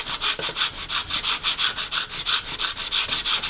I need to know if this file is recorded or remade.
recorded